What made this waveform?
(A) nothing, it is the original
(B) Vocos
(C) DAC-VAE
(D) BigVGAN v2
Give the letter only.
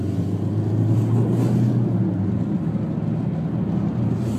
A